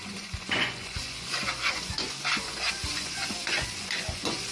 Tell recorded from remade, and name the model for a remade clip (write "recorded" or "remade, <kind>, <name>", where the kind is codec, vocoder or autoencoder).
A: remade, vocoder, Vocos